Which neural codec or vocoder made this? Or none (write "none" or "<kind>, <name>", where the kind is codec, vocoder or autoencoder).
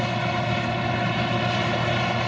none